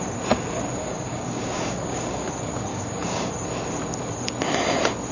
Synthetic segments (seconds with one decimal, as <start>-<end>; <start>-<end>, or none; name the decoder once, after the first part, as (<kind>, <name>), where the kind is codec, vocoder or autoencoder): 0.8-2.3 (codec, DAC); 2.7-3.3